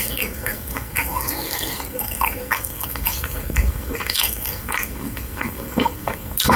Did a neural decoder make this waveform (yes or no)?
yes